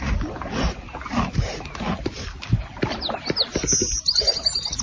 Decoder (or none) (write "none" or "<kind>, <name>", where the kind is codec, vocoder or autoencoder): none